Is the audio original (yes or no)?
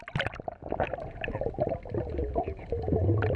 yes